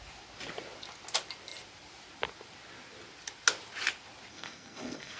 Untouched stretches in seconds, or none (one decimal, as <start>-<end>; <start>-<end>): 0.0-4.3